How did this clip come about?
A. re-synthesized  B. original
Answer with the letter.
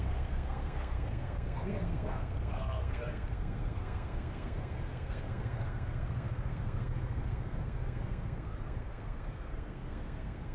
A